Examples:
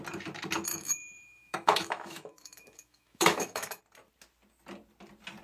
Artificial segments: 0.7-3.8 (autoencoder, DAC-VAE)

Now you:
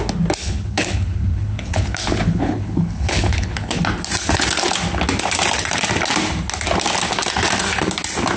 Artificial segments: 0.4-3.8 (codec, HILCodec)